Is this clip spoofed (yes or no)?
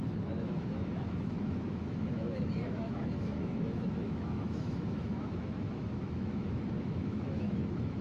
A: yes